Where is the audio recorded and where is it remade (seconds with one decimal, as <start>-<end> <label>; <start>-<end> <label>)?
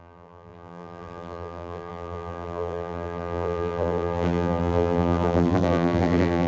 0.0-6.5 remade